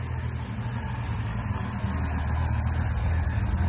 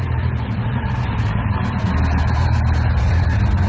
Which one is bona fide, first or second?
first